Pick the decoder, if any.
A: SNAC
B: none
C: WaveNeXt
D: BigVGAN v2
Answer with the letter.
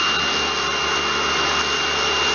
B